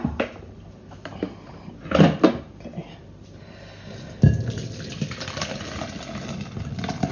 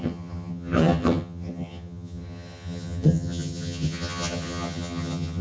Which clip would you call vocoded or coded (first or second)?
second